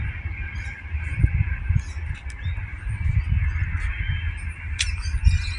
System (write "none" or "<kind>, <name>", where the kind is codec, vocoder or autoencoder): none